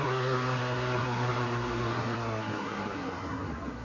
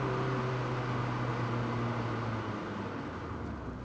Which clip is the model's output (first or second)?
first